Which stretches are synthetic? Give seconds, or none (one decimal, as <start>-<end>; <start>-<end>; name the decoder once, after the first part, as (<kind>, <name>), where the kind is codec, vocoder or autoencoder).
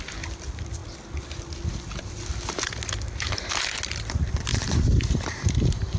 4.5-6.0 (vocoder, BigVGAN v2)